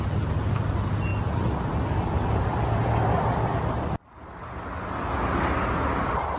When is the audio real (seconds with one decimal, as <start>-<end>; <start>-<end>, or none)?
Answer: 0.0-6.4

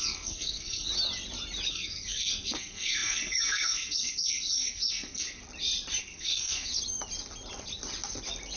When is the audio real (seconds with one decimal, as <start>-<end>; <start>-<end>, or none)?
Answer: 0.9-1.7; 5.4-6.0; 6.7-8.6

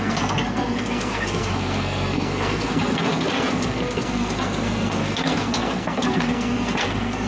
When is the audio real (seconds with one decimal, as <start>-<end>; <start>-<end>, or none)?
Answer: none

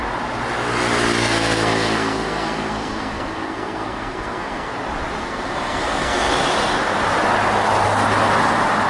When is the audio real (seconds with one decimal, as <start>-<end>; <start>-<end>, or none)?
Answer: 0.0-1.2; 4.7-5.2; 6.3-8.9